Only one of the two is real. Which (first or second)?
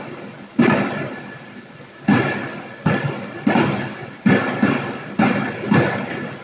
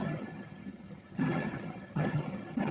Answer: first